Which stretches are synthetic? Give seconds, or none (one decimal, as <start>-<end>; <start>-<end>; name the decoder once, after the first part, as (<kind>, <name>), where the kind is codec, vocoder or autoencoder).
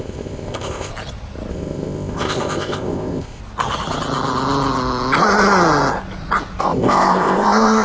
0.0-0.9 (codec, ZipCodec); 1.5-3.4; 6.6-7.8